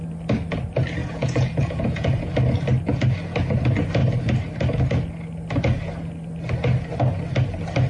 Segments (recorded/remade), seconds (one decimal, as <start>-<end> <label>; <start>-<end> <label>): 0.0-1.0 recorded; 1.0-2.3 remade; 2.3-7.9 recorded